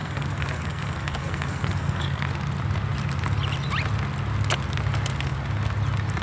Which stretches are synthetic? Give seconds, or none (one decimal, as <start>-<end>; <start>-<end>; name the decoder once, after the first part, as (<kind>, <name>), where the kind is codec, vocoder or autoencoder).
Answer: 0.0-2.3 (codec, SNAC)